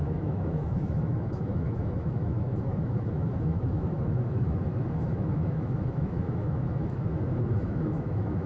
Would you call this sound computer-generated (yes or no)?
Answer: yes